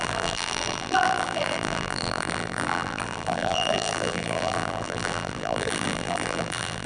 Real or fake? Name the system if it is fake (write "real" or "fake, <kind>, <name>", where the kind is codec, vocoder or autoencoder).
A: fake, vocoder, BigVGAN v2